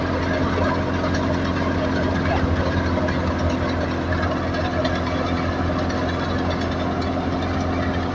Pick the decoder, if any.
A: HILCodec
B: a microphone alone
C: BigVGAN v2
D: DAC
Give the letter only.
B